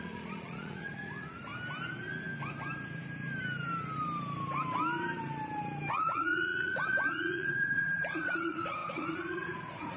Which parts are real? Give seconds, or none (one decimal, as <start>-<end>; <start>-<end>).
1.5-5.9